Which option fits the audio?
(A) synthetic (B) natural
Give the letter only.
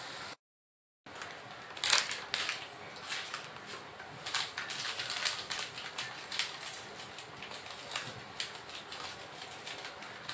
B